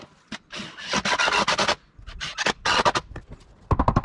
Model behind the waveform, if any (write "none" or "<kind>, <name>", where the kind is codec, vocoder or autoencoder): none